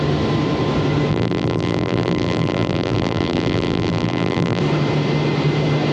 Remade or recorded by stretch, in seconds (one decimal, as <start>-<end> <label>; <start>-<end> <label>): 0.0-1.1 recorded; 1.1-4.6 remade; 4.6-5.9 recorded